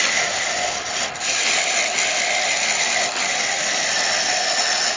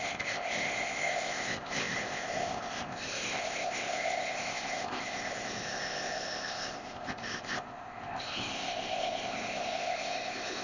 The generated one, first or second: second